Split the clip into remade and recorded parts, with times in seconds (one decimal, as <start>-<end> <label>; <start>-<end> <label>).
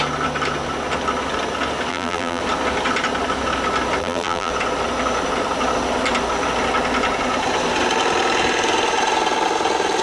0.0-1.9 recorded; 1.9-2.4 remade; 2.4-4.0 recorded; 4.0-4.5 remade; 4.5-10.0 recorded